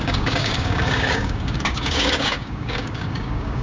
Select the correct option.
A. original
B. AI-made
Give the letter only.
B